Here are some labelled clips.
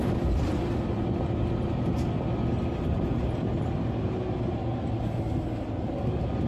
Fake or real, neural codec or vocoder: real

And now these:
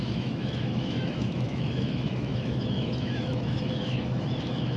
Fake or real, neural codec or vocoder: fake, autoencoder, DAC-VAE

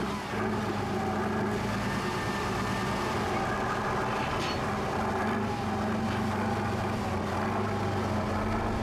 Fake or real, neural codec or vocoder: real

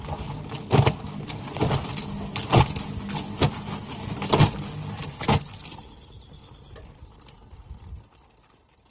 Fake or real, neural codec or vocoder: real